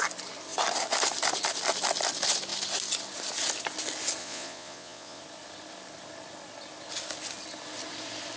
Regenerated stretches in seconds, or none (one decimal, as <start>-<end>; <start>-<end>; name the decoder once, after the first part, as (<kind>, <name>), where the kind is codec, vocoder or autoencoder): 4.2-5.2 (vocoder, Vocos)